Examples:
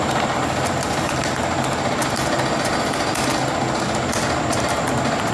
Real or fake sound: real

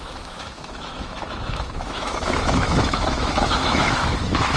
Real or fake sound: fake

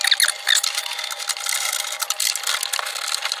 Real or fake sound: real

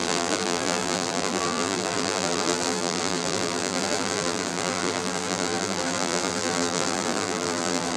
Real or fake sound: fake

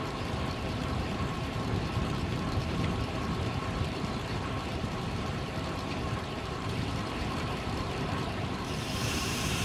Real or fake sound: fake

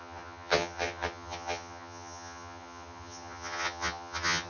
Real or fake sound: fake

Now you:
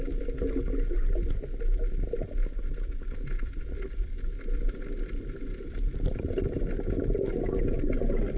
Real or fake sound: real